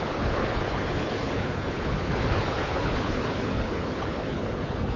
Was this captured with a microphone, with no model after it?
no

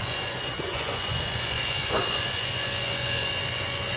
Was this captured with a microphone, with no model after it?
no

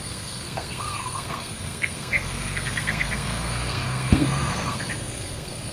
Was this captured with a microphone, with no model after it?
no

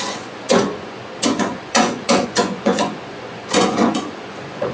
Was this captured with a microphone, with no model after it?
no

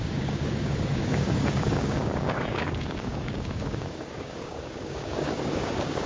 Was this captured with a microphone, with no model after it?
no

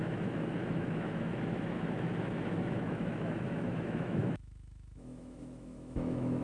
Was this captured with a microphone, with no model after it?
no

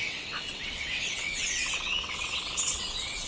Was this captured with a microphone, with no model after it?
no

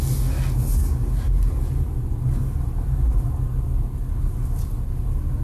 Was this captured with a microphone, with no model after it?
yes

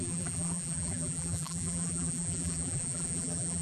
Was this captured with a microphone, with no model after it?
no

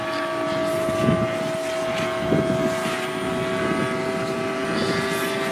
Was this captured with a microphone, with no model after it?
yes